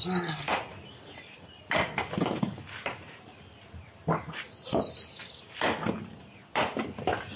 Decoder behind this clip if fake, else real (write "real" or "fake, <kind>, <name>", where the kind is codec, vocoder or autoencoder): real